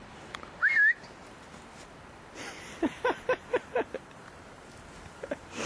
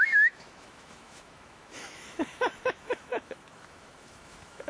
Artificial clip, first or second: second